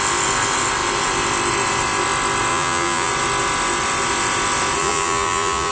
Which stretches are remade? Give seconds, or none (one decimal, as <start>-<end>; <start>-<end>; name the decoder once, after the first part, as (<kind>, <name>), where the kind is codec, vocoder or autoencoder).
2.5-3.1 (vocoder, BigVGAN v2); 4.8-5.7